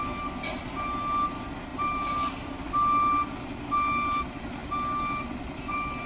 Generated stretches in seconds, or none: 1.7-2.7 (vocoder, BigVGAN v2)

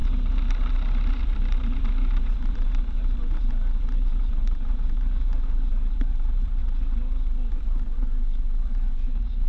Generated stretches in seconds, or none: 1.2-6.6 (vocoder, BigVGAN v2); 7.5-9.5